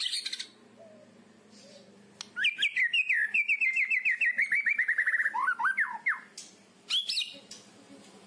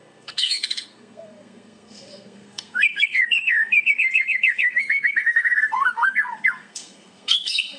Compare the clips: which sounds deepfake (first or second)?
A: second